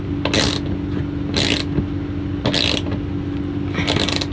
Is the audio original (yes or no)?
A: yes